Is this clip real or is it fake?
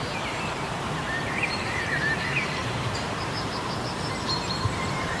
fake